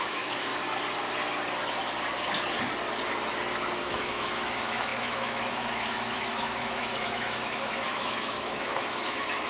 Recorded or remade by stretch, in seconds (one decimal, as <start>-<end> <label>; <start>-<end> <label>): 0.0-0.5 remade; 0.5-3.8 recorded; 3.8-9.5 remade